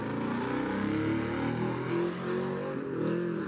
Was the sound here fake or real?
real